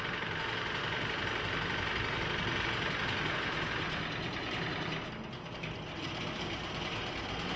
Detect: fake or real real